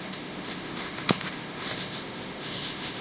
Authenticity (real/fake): fake